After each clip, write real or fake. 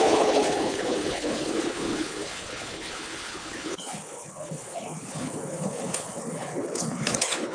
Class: fake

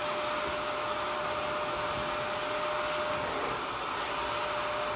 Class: real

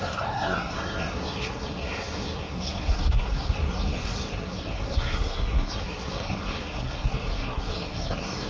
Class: fake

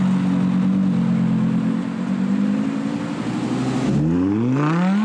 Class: real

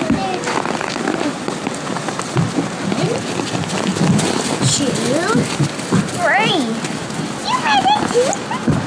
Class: real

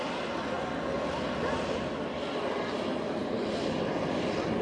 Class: real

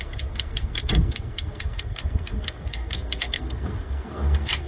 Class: fake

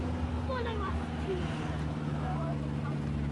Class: real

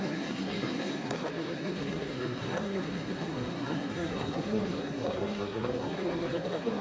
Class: fake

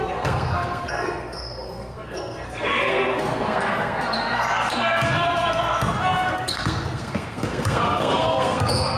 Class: fake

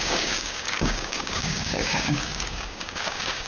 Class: fake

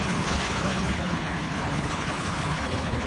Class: fake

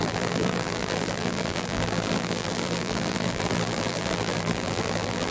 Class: fake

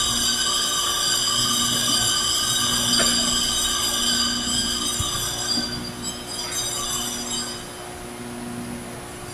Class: real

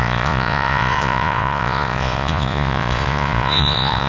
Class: fake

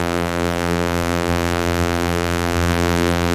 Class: fake